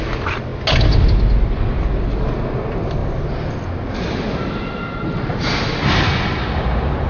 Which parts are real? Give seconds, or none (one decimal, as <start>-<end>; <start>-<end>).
0.0-7.1